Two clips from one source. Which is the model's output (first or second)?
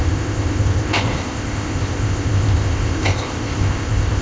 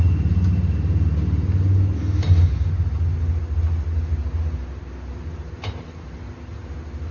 first